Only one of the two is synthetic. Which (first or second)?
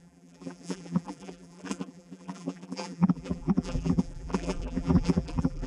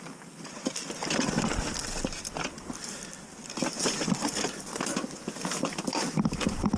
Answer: first